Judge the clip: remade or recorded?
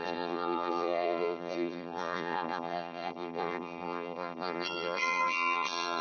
remade